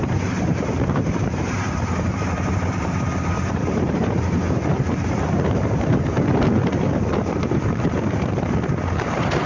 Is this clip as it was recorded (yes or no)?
no